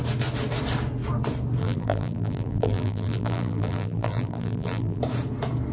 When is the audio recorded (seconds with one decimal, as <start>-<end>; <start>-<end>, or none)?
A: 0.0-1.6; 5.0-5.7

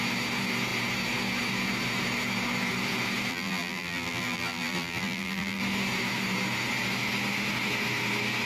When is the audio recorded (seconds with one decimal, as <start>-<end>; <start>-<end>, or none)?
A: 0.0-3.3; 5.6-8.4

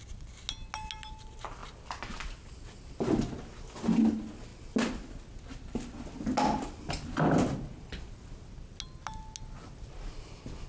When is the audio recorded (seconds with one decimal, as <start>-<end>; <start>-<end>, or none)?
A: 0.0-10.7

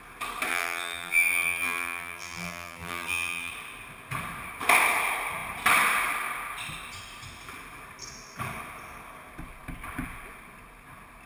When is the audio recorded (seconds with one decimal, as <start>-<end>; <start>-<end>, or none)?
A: 0.0-0.5; 3.5-11.3

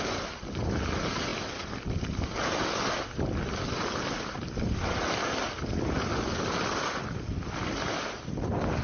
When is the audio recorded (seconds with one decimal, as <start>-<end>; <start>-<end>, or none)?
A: 0.0-8.8

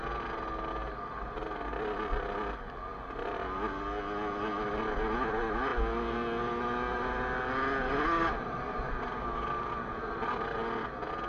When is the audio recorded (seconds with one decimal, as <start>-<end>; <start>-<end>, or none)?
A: 0.0-11.3

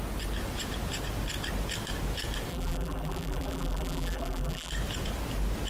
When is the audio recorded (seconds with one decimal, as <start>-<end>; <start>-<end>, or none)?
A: 0.0-2.5; 4.7-5.7